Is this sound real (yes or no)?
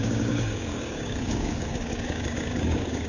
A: no